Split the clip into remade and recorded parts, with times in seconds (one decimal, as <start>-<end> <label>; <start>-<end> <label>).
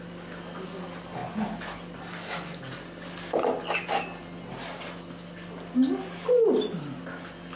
0.0-7.6 recorded